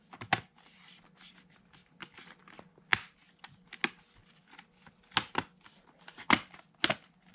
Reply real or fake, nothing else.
real